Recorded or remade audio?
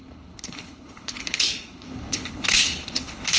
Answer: remade